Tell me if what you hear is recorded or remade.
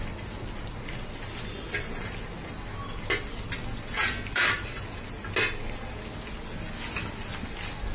recorded